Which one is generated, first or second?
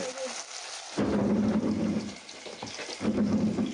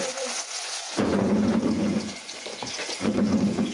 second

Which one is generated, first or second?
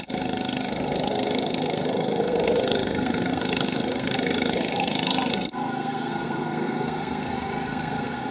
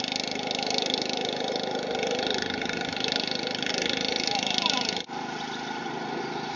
first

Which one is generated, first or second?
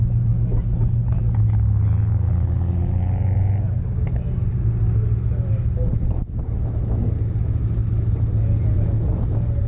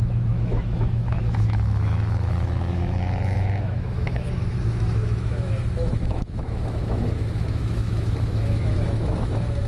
second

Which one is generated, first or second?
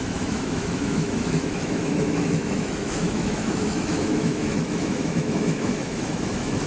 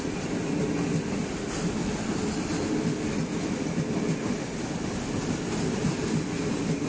first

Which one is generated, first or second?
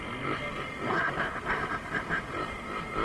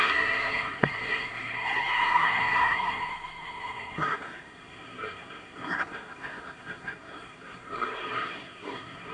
second